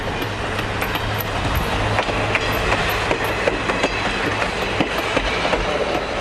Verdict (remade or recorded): recorded